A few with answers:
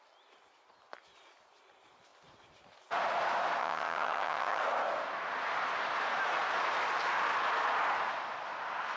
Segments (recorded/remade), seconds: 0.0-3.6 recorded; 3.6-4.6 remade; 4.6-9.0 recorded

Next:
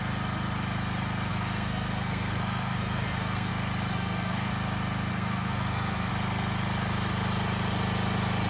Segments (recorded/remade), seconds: 0.0-1.3 recorded; 1.3-3.5 remade; 3.5-3.9 recorded; 3.9-4.5 remade; 4.5-5.1 recorded; 5.1-6.1 remade; 6.1-8.5 recorded

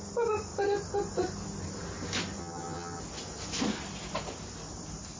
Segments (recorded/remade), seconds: 0.0-2.4 recorded; 2.4-3.0 remade; 3.0-5.2 recorded

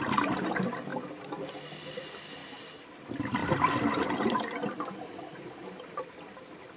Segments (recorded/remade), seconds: 0.0-3.4 recorded; 3.4-5.6 remade; 5.6-6.8 recorded

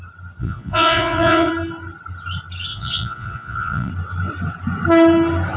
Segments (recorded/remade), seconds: 0.0-0.4 recorded; 0.4-1.5 remade; 1.5-2.7 recorded; 2.7-3.9 remade; 3.9-5.6 recorded

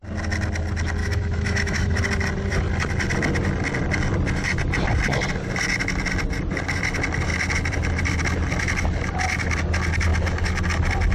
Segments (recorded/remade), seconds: 0.0-1.0 recorded; 1.0-2.0 remade; 2.0-11.1 recorded

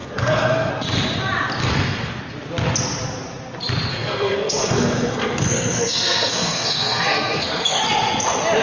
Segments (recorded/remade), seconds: 0.0-0.7 remade; 0.7-1.6 recorded; 1.6-2.2 remade; 2.2-3.9 recorded; 3.9-7.8 remade; 7.8-8.6 recorded

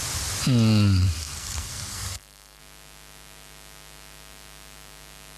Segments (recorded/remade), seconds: 0.0-1.0 recorded; 1.0-2.6 remade; 2.6-5.4 recorded